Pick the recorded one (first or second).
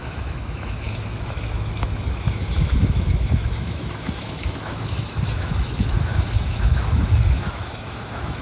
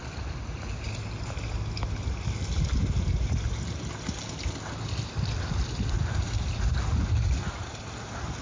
second